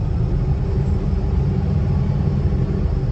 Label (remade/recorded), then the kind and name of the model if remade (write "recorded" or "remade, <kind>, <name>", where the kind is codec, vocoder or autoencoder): remade, vocoder, BigVGAN v2